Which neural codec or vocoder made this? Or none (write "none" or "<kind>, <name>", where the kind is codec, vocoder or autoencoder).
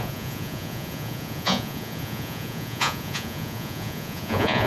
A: vocoder, Vocos